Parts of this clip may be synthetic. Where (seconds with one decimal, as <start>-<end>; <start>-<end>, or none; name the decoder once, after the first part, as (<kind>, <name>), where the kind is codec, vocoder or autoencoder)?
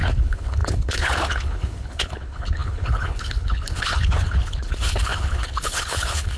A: 0.0-6.4 (codec, HILCodec)